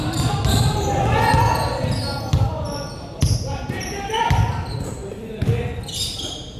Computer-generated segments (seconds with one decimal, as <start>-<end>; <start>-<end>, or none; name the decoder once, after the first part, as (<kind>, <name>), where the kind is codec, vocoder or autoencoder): 3.2-4.2 (vocoder, BigVGAN v2)